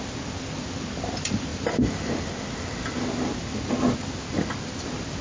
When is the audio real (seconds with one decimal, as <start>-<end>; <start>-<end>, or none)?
0.0-5.2